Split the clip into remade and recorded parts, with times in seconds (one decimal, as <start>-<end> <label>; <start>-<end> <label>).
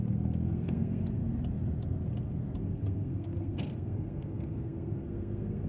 0.0-1.2 remade; 1.2-2.6 recorded; 2.6-5.7 remade